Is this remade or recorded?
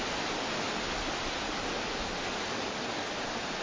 recorded